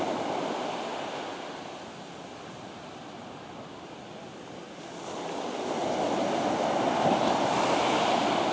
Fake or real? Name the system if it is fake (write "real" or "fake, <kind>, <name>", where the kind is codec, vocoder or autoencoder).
real